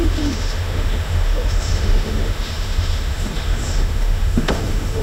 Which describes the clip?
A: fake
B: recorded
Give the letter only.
A